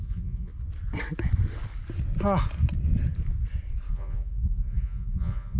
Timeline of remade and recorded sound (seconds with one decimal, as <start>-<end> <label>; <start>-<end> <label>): 0.0-0.5 remade; 0.5-3.9 recorded; 3.9-5.6 remade